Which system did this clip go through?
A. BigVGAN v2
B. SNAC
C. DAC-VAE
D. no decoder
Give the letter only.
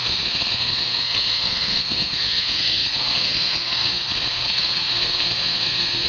B